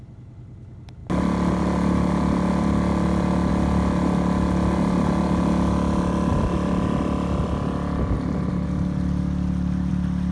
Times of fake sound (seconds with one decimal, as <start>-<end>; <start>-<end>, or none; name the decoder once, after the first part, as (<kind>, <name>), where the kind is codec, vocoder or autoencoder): none